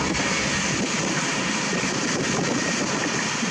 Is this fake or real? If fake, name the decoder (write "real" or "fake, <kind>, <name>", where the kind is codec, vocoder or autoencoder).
real